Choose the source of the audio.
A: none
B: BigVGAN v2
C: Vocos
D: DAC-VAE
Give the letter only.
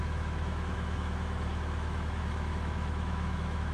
D